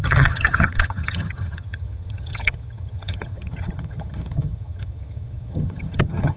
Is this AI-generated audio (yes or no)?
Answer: yes